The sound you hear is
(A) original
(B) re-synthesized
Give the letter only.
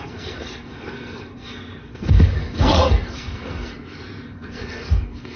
B